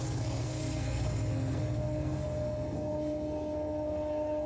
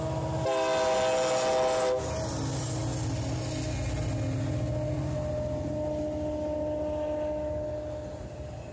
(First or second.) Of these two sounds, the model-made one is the first